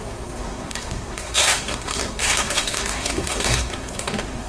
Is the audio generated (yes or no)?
yes